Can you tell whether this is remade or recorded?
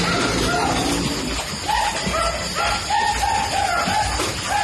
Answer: recorded